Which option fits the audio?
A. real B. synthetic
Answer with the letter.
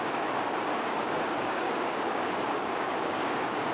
B